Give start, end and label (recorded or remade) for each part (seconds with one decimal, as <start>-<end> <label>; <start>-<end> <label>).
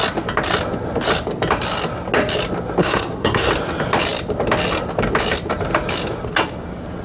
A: 0.0-2.8 recorded; 2.8-3.5 remade; 3.5-7.0 recorded